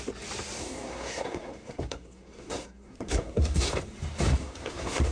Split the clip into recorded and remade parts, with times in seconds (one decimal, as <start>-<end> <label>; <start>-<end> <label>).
0.0-0.6 recorded; 0.6-3.7 remade; 3.7-4.4 recorded; 4.4-5.1 remade

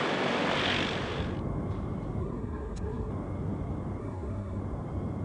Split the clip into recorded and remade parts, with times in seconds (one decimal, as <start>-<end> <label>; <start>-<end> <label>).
0.0-2.2 recorded; 2.2-3.1 remade; 3.1-4.0 recorded; 4.0-4.6 remade; 4.6-5.2 recorded

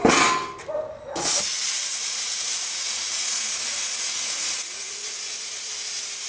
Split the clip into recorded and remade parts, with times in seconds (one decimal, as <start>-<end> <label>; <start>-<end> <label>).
0.0-1.9 recorded; 1.9-5.7 remade; 5.7-6.3 recorded

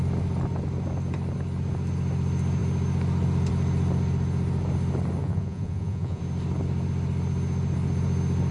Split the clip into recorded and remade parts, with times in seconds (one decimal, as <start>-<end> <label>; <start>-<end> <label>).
0.0-5.2 recorded; 5.2-6.2 remade; 6.2-8.5 recorded

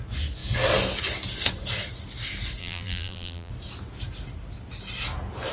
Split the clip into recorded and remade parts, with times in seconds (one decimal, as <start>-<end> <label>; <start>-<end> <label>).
0.0-2.6 recorded; 2.6-3.5 remade; 3.5-5.5 recorded